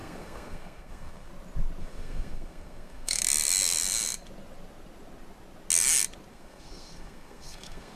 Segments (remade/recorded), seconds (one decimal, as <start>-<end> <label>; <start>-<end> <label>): 0.0-1.3 remade; 1.3-1.8 recorded; 1.8-3.2 remade; 3.2-6.3 recorded; 6.3-8.0 remade